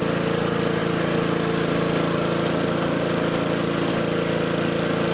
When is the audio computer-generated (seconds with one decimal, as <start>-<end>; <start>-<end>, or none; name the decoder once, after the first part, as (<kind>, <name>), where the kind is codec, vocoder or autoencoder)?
none

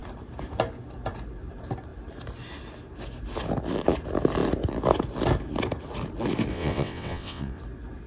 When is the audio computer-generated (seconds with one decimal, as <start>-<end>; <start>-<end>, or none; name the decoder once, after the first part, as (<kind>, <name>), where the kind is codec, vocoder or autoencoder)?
6.5-7.6 (vocoder, WaveNeXt)

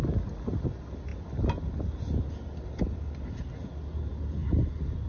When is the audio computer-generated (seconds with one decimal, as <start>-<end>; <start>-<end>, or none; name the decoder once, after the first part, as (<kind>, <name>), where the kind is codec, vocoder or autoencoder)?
none

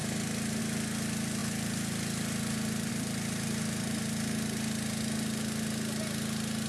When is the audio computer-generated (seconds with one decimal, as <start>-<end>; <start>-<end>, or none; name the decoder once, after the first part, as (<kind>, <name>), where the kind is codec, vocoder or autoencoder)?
none